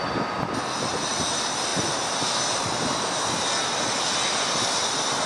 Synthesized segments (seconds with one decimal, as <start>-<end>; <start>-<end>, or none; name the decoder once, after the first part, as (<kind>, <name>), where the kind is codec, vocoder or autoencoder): none